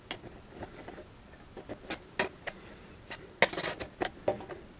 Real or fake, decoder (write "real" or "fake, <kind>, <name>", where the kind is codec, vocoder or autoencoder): real